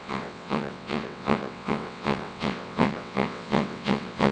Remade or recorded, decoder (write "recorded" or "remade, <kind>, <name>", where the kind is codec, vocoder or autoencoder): remade, vocoder, WaveNeXt